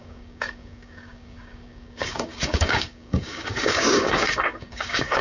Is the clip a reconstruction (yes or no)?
yes